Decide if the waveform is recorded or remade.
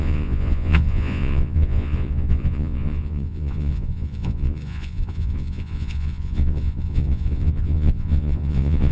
remade